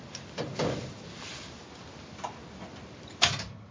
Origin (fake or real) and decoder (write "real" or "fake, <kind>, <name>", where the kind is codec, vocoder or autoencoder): real